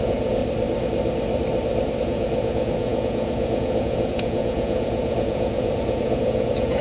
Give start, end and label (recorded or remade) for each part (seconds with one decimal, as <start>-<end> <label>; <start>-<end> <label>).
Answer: 0.0-0.4 remade; 0.4-2.0 recorded; 2.0-6.8 remade